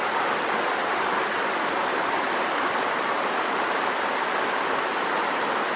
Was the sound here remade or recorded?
recorded